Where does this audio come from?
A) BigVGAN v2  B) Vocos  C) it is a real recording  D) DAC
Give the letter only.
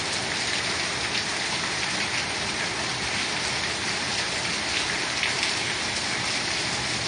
C